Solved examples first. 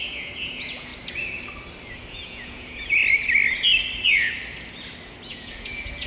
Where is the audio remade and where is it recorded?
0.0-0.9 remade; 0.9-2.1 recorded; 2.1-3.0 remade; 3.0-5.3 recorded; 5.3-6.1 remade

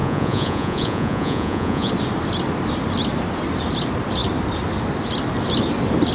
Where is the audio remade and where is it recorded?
0.0-1.9 remade; 1.9-6.1 recorded

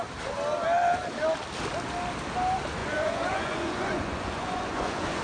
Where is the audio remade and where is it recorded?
0.0-2.8 recorded; 2.8-5.2 remade

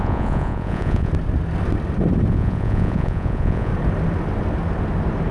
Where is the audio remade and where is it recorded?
0.0-1.1 remade; 1.1-2.3 recorded; 2.3-3.7 remade; 3.7-5.3 recorded